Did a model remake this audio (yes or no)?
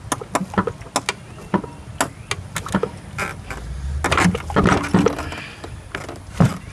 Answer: no